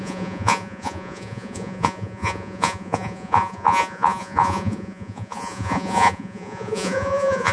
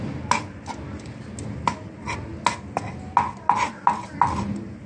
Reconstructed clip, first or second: first